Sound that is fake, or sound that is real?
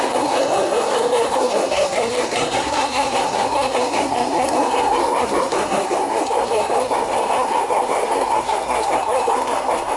fake